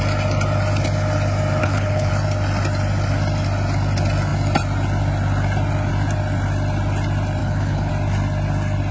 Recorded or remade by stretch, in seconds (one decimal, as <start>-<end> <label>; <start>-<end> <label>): 0.0-1.6 recorded; 1.6-2.1 remade; 2.1-7.4 recorded; 7.4-7.9 remade; 7.9-8.9 recorded